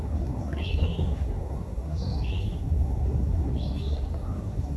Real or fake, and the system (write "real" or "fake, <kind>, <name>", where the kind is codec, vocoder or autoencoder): fake, codec, SNAC